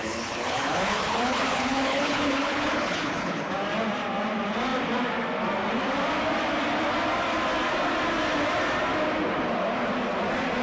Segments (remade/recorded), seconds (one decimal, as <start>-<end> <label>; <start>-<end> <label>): 0.0-3.5 remade; 3.5-10.6 recorded